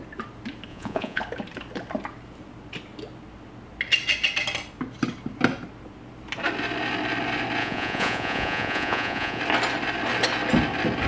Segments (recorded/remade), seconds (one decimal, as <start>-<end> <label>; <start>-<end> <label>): 0.0-0.7 recorded; 0.7-1.2 remade; 1.2-7.6 recorded; 7.6-9.4 remade; 9.4-11.1 recorded